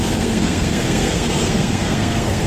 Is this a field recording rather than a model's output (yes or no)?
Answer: no